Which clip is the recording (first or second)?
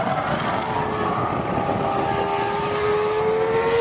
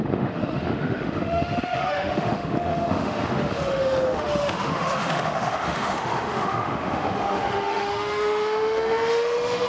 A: first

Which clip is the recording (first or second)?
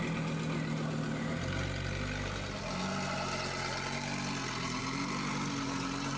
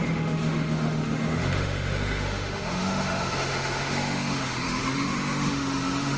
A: first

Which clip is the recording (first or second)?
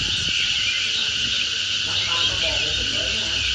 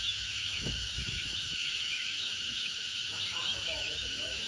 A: first